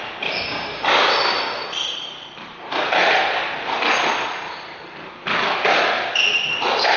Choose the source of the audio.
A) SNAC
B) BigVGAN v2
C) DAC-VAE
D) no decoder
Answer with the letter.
D